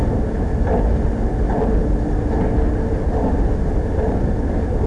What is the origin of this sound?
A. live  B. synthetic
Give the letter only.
A